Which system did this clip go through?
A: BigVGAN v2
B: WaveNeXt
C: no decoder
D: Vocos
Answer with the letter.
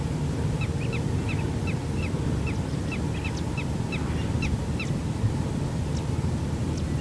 C